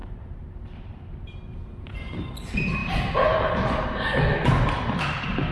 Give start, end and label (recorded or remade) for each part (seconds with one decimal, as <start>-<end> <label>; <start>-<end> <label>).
0.0-2.0 remade; 2.0-2.8 recorded; 2.8-3.5 remade; 3.5-5.5 recorded